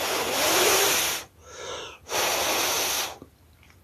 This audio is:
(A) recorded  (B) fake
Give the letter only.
A